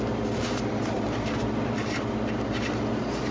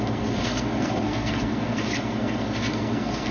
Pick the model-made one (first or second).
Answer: second